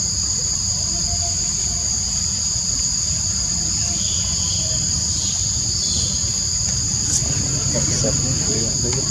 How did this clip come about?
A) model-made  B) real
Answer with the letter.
B